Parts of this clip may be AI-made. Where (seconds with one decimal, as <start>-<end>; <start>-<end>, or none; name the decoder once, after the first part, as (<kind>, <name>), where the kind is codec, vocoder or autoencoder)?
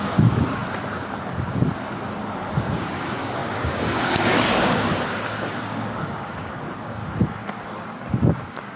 0.0-0.6 (codec, DAC); 2.6-7.0; 8.1-8.8